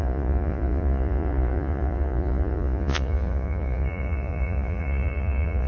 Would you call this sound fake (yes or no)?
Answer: yes